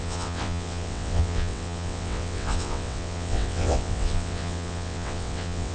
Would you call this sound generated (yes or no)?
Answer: yes